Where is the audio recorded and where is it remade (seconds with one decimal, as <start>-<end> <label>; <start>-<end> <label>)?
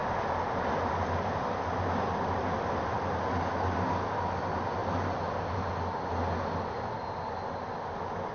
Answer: 0.0-4.8 recorded; 4.8-5.7 remade; 5.7-8.3 recorded